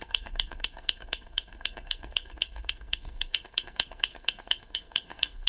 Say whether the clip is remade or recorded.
remade